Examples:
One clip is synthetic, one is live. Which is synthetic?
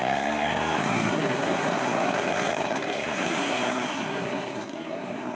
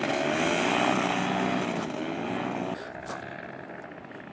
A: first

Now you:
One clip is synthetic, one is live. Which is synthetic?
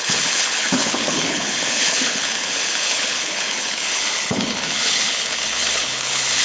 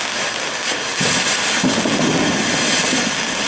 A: first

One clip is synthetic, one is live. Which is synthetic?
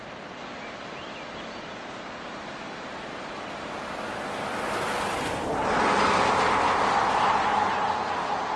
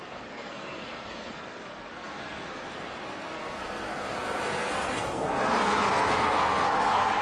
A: second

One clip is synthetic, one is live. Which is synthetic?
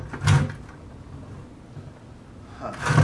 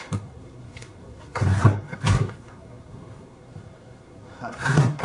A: second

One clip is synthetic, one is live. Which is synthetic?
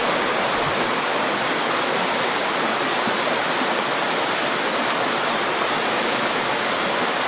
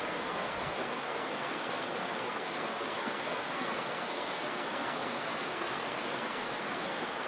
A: second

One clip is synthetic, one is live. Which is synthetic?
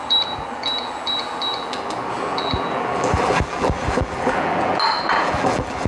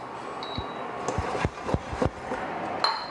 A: first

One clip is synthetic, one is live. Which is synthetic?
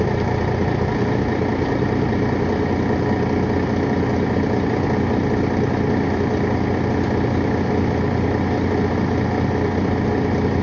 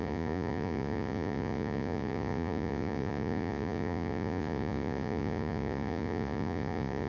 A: second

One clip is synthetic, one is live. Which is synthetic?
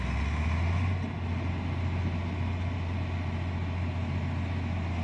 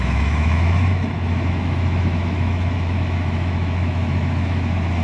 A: second